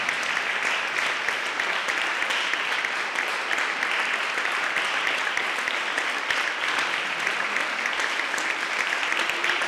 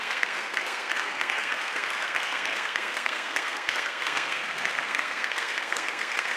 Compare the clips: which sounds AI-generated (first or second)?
second